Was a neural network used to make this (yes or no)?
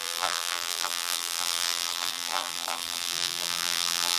yes